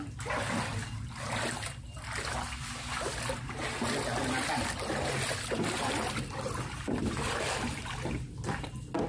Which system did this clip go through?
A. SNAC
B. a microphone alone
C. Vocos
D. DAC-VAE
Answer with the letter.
B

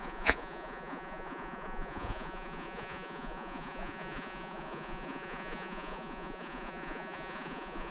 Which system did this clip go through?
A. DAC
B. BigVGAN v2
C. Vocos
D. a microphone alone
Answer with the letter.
C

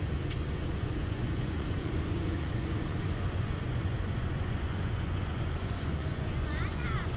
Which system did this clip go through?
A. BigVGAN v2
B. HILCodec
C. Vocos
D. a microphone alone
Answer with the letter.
C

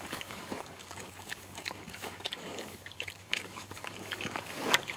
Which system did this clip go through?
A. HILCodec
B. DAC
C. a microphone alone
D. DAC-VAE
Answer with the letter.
B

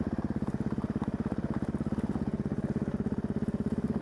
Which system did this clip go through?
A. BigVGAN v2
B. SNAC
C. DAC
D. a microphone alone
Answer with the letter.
D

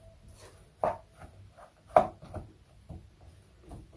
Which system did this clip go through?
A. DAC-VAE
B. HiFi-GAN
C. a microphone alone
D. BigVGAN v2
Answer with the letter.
C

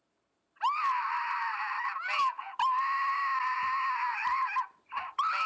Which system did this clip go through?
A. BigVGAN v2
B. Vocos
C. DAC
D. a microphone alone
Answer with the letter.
A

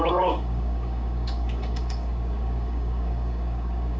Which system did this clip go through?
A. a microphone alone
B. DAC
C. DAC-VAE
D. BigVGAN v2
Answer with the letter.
B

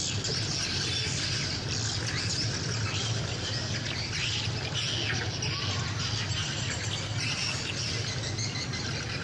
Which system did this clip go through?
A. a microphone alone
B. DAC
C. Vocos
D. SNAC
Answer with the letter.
A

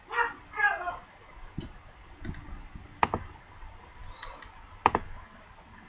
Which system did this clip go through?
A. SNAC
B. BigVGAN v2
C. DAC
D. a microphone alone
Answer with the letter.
D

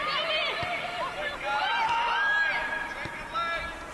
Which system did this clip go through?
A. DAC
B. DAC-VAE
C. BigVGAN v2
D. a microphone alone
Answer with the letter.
D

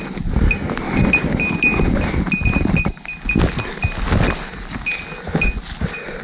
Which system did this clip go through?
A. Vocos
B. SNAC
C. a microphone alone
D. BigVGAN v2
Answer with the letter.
C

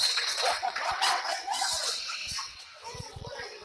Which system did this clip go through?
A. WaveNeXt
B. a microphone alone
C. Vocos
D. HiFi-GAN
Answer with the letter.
A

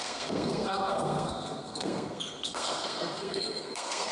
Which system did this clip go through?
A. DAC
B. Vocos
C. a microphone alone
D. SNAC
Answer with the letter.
D